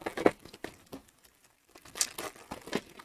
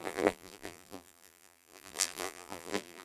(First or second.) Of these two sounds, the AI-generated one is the second